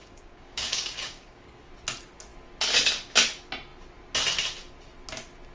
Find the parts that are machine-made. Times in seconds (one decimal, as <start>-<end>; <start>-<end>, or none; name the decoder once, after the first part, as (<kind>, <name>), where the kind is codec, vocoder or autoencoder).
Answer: 0.0-1.7 (codec, DAC)